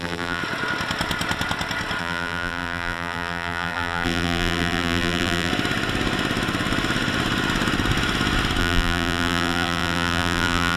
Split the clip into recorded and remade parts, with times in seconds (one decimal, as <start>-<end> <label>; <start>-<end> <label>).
0.0-0.4 remade; 0.4-2.0 recorded; 2.0-5.5 remade; 5.5-8.6 recorded; 8.6-10.8 remade